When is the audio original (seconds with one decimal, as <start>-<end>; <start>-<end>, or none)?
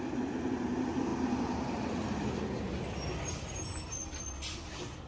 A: 0.0-5.1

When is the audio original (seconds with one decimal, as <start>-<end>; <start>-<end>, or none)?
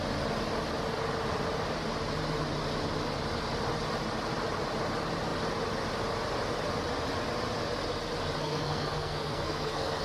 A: 0.0-8.4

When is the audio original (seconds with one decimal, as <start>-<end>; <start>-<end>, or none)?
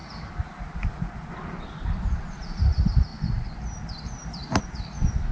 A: 0.0-5.3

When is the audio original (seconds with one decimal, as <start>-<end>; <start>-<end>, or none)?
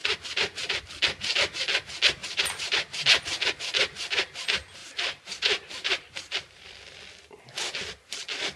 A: 0.8-2.2; 2.8-4.8; 6.7-8.6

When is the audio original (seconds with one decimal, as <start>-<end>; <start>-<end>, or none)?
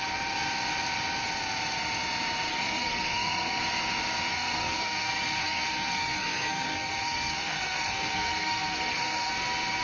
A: 0.0-2.5; 3.6-4.3; 9.3-9.8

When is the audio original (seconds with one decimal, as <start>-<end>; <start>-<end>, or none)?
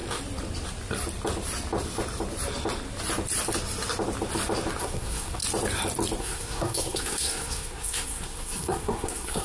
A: 0.0-4.8; 5.4-6.2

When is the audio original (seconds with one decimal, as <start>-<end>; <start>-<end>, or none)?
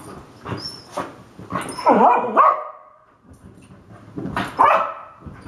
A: 0.0-5.5